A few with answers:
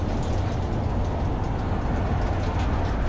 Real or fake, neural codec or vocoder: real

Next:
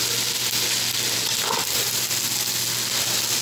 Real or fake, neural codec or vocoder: real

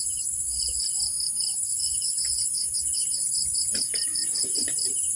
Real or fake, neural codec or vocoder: fake, vocoder, Vocos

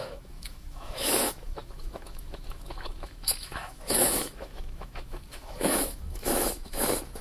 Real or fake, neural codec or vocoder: fake, autoencoder, DAC-VAE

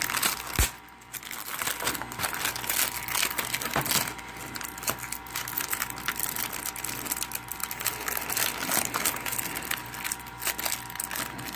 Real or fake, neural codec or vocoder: real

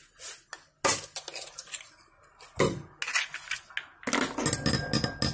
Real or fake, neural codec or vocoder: real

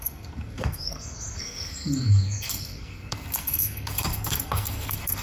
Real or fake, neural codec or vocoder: fake, codec, SNAC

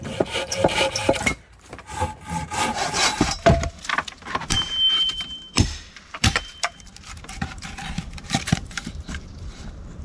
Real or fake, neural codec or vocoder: fake, vocoder, BigVGAN v2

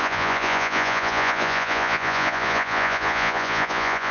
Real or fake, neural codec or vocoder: fake, vocoder, Vocos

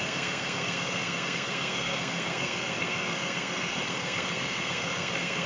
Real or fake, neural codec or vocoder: fake, codec, SNAC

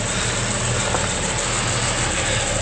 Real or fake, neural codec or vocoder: real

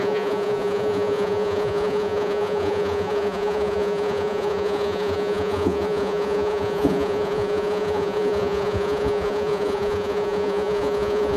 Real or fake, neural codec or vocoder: fake, vocoder, Vocos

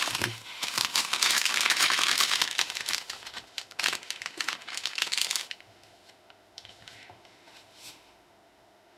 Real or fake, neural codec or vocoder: fake, autoencoder, DAC-VAE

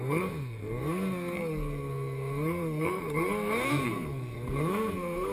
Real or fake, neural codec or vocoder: fake, codec, SNAC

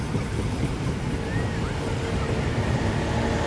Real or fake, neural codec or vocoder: fake, vocoder, BigVGAN v2